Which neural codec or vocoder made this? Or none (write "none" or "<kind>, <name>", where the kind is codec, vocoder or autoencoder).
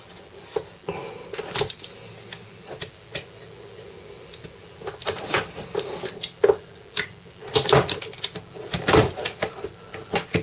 none